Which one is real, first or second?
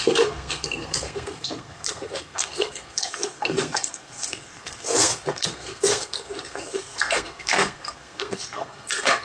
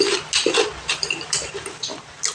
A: second